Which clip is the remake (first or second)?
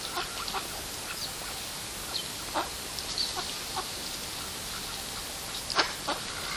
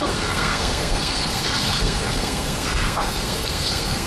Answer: second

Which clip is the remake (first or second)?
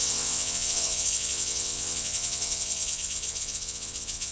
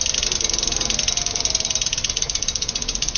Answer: first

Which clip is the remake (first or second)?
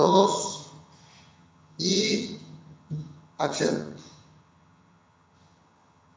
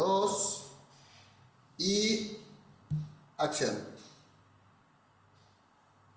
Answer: first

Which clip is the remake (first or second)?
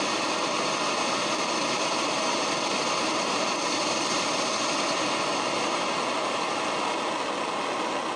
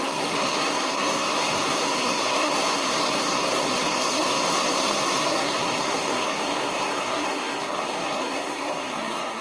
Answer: second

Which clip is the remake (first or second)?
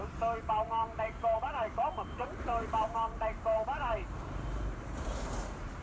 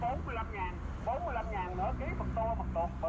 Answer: first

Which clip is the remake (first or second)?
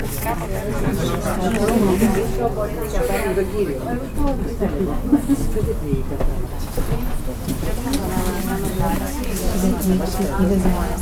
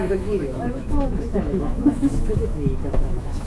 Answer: second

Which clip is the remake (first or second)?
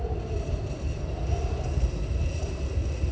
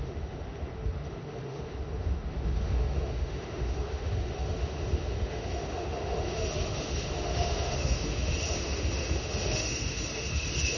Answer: second